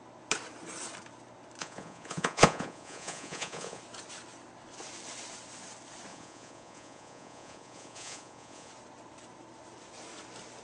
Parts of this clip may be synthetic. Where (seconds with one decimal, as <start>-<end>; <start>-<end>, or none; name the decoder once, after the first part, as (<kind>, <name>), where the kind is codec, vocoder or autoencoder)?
1.6-3.8 (vocoder, Vocos); 6.1-8.7